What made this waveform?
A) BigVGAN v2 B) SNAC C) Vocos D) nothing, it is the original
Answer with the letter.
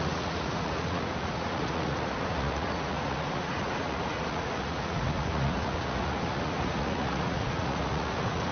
C